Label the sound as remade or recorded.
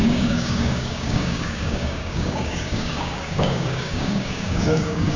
remade